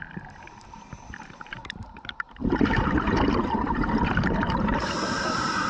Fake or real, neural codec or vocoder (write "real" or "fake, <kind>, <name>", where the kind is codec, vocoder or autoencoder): fake, vocoder, BigVGAN v2